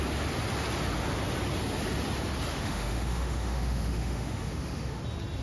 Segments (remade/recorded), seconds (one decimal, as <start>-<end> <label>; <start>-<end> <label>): 0.0-2.5 recorded; 2.5-5.0 remade; 5.0-5.4 recorded